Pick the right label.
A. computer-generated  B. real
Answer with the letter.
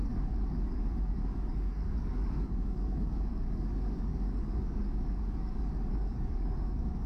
A